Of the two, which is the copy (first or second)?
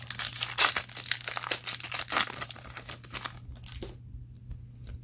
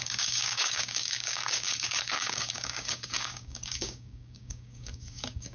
second